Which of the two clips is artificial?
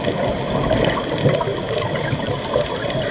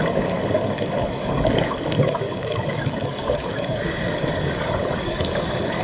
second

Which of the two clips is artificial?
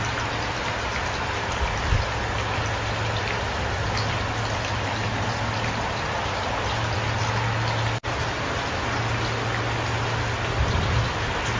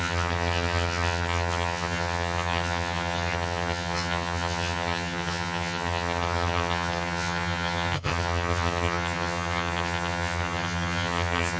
second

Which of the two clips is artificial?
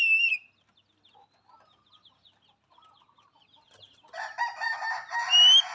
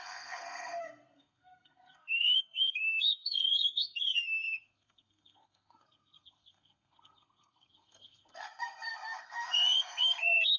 second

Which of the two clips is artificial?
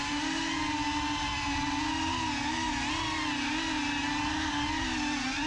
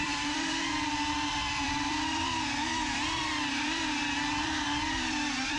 second